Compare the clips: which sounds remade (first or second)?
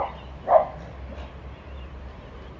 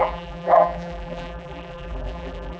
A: second